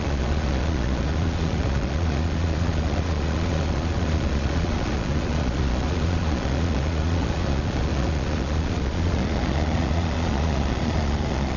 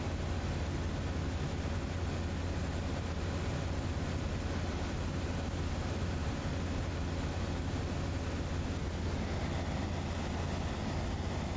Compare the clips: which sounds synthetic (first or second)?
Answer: first